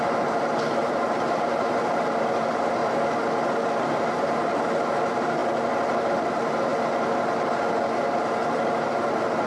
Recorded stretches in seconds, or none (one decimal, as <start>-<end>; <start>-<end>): 2.8-3.8; 5.4-6.3; 6.7-8.0